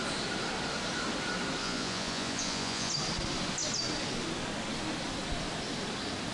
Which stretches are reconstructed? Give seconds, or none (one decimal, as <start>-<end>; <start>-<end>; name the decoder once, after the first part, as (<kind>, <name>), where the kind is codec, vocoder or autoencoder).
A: 1.6-2.9 (vocoder, Vocos)